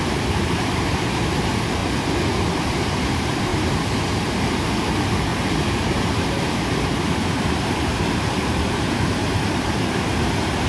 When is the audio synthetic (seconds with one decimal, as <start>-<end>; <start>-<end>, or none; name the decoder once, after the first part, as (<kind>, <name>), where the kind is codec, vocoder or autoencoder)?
0.0-1.8 (vocoder, BigVGAN v2); 2.3-10.7